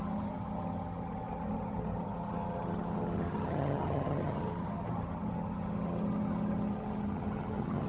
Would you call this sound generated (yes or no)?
yes